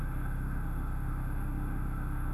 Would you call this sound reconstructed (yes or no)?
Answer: yes